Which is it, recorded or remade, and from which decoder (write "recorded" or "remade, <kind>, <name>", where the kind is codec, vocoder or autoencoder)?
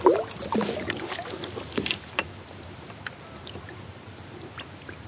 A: recorded